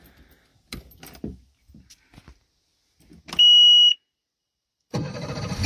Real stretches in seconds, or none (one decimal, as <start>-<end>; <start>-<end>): 0.0-4.4